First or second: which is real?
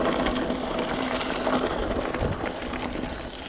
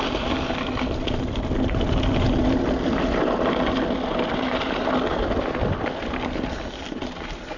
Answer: first